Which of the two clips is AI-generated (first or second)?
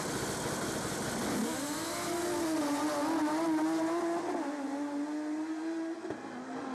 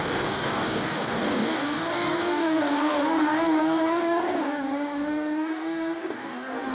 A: second